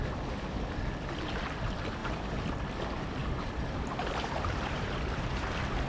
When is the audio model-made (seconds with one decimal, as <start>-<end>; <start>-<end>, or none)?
2.0-2.5; 3.2-5.5